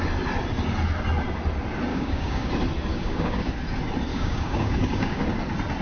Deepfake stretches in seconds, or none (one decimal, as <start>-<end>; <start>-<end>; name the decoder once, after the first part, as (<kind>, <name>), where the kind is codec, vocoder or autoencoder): 1.9-2.5 (codec, DAC); 2.9-3.5; 4.1-5.2

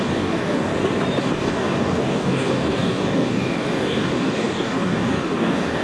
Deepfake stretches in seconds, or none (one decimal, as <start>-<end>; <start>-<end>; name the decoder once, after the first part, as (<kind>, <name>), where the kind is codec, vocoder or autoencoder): 0.0-0.7 (codec, DAC); 1.2-5.8